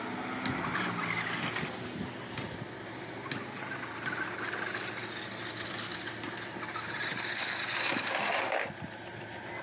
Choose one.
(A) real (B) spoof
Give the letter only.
A